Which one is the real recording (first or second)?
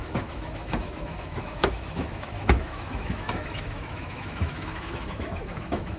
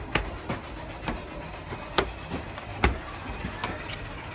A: second